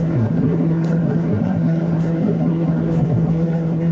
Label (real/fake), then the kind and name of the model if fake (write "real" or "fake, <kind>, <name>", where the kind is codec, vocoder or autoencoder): fake, codec, SNAC